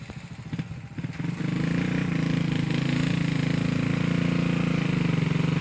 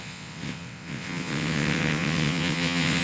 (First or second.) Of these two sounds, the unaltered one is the first